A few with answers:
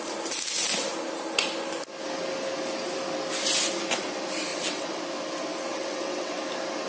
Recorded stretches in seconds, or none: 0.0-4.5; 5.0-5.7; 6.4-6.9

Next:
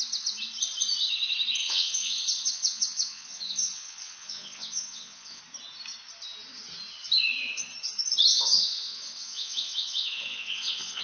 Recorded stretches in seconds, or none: 0.0-1.6; 5.4-8.3

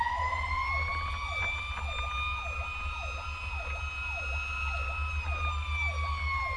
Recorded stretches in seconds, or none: 0.0-6.6

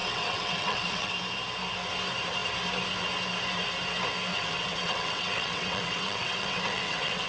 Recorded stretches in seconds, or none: 1.1-4.3

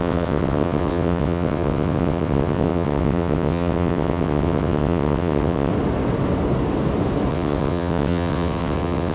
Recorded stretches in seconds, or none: 5.7-7.3